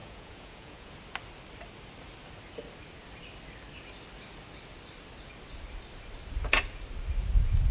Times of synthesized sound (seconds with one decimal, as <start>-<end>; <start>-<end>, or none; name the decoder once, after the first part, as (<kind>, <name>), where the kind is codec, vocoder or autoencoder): 0.0-0.9 (vocoder, Vocos)

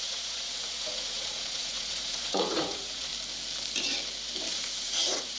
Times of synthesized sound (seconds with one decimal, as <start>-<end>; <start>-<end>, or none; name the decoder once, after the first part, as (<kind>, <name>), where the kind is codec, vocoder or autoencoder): 0.0-3.1 (vocoder, Vocos); 4.5-5.4

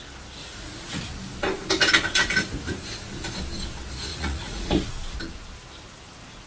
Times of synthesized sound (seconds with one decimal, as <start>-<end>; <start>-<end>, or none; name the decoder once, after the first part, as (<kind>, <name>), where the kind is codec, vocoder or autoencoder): 0.4-1.0 (vocoder, Vocos); 4.1-5.2